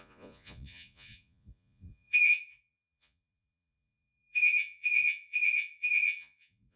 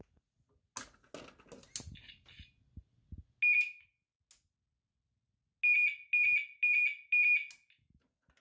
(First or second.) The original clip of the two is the second